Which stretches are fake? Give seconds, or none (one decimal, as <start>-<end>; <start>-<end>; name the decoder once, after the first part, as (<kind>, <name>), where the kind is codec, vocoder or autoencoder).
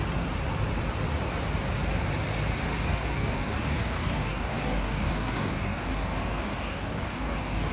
2.9-7.7 (codec, DAC)